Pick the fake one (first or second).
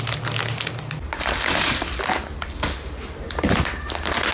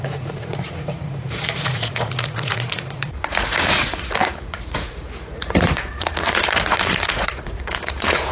second